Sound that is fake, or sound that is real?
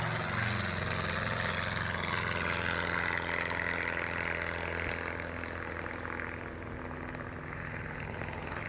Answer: real